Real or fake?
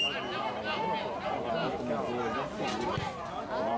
real